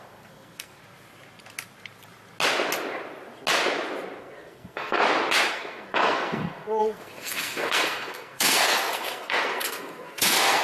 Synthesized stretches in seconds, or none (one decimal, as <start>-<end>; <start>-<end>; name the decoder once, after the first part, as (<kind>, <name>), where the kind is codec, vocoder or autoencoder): 0.0-0.8 (codec, SNAC); 4.2-5.0; 5.5-10.6